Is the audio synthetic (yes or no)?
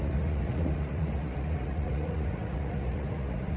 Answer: yes